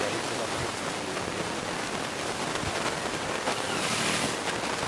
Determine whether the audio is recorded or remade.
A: recorded